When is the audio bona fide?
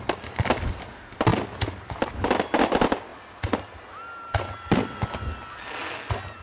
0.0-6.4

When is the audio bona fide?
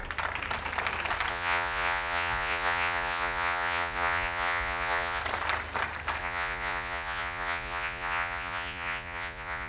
0.0-1.3; 5.2-6.2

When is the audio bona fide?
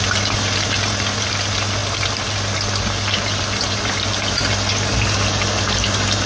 0.0-6.3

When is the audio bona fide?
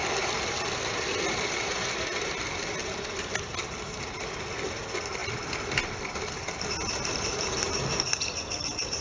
0.0-9.0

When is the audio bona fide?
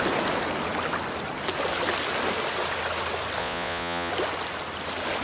0.0-3.4; 4.1-5.2